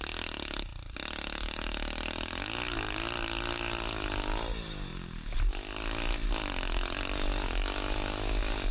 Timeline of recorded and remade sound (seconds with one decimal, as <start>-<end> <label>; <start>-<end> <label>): 0.0-8.7 recorded